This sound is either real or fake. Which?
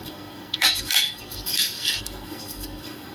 fake